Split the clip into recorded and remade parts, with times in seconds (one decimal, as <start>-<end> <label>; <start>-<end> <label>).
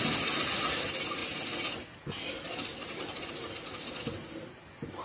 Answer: 0.0-5.0 recorded